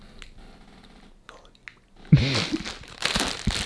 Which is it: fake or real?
real